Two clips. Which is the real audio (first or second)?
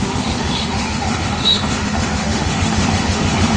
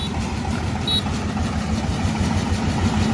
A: second